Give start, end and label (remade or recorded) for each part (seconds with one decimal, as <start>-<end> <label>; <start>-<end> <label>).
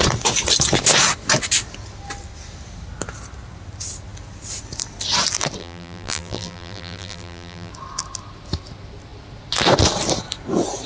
0.0-5.6 recorded; 5.6-7.7 remade; 7.7-10.9 recorded